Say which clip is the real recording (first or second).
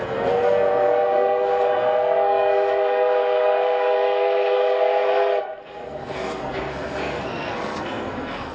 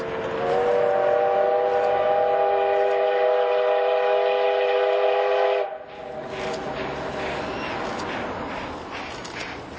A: second